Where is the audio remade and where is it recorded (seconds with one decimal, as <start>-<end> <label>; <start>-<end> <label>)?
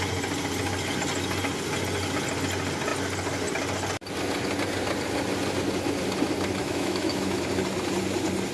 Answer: 0.0-6.6 recorded; 6.6-7.4 remade; 7.4-8.5 recorded